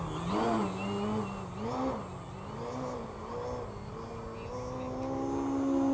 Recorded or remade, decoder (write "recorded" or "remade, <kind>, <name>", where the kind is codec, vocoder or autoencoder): recorded